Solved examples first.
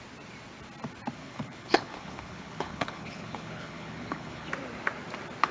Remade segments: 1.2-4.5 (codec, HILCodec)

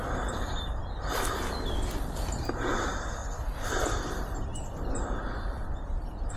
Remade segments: 0.0-0.8 (vocoder, BigVGAN v2); 2.4-3.2; 4.1-4.5; 5.4-6.4

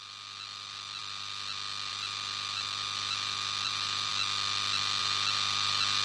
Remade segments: none

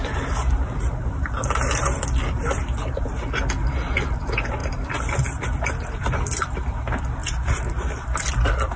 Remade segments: 0.0-3.0 (vocoder, BigVGAN v2); 4.6-6.7; 7.2-8.8

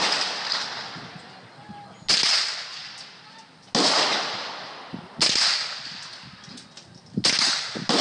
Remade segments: none

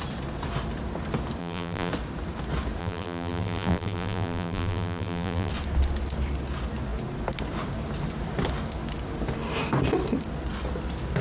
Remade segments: 1.4-1.9 (vocoder, BigVGAN v2); 2.8-5.5

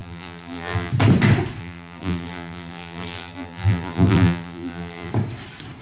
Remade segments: 0.0-0.9 (vocoder, BigVGAN v2); 1.6-5.1